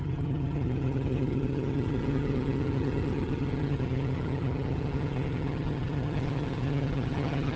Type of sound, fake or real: fake